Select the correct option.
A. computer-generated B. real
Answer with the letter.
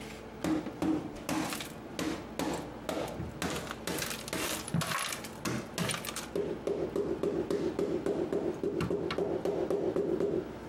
B